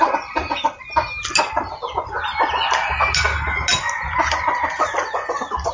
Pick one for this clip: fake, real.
real